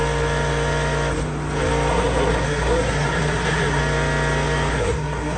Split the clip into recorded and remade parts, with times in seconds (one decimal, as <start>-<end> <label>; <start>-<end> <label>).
0.0-1.9 recorded; 1.9-3.8 remade; 3.8-4.7 recorded; 4.7-5.4 remade